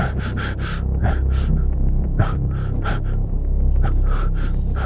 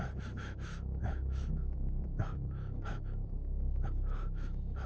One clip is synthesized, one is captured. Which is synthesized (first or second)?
second